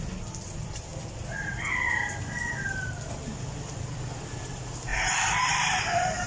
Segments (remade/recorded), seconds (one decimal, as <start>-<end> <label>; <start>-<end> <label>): 0.0-4.9 recorded; 4.9-6.3 remade